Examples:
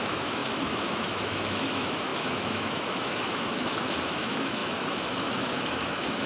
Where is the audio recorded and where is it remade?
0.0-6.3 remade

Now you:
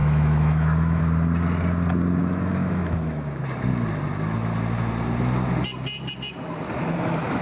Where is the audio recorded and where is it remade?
0.0-1.0 remade; 1.0-2.2 recorded; 2.2-3.4 remade; 3.4-7.4 recorded